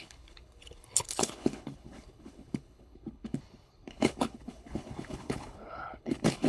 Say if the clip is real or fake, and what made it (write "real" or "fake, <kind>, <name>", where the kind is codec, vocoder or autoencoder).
fake, codec, HILCodec